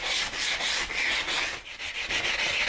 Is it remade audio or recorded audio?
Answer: recorded